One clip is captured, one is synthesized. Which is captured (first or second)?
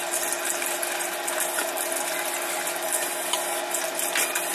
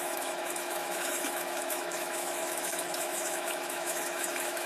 first